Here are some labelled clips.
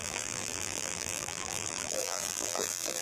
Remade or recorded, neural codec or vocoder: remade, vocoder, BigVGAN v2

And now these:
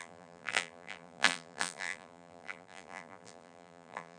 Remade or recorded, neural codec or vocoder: remade, vocoder, BigVGAN v2